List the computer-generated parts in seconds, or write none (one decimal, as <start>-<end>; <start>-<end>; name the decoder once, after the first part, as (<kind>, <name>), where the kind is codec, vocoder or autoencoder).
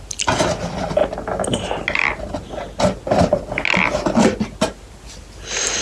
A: none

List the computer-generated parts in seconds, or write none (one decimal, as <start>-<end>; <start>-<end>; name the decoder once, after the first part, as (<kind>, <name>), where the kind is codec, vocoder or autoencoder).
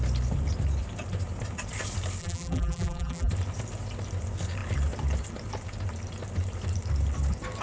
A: 2.2-3.3 (vocoder, BigVGAN v2)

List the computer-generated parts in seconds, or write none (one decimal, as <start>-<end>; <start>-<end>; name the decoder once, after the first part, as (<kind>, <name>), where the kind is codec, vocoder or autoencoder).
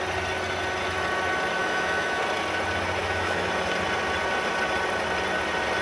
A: 1.6-2.2 (autoencoder, DAC-VAE); 3.0-3.5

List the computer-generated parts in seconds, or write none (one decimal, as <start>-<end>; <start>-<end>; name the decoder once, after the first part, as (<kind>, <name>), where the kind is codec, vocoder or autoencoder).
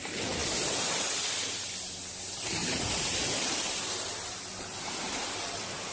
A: none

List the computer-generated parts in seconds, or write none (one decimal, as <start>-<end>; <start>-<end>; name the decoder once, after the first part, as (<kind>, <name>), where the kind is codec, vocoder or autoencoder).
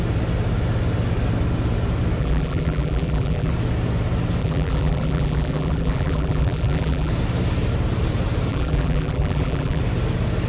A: 2.2-3.5 (vocoder, BigVGAN v2); 4.4-7.1; 8.5-9.8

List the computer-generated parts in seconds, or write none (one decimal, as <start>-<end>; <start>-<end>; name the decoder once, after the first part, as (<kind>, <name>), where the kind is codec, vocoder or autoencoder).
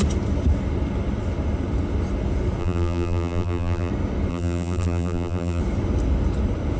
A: 2.6-3.9 (vocoder, BigVGAN v2); 4.3-5.6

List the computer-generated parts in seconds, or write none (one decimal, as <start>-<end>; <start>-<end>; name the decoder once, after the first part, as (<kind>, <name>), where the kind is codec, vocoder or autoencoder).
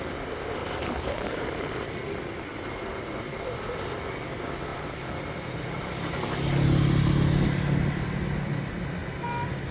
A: 0.6-2.2 (vocoder, BigVGAN v2); 4.7-5.9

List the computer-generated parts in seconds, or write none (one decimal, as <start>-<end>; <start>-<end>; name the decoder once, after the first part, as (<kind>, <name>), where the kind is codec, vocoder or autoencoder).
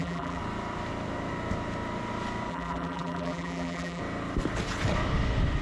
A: 0.0-0.4 (vocoder, BigVGAN v2); 2.5-4.0